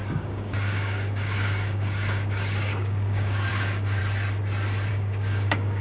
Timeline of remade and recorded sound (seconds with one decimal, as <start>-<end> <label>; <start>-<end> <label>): 0.0-4.0 remade; 4.0-4.9 recorded; 4.9-5.8 remade